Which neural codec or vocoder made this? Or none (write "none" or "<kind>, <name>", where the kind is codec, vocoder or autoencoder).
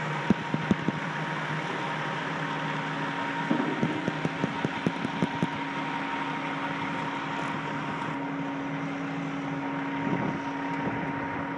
none